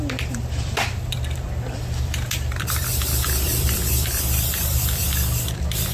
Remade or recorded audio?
remade